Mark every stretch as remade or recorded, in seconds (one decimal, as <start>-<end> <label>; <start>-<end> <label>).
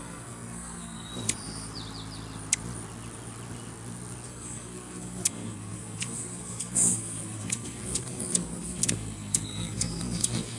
0.0-1.1 remade; 1.1-4.3 recorded; 4.3-10.6 remade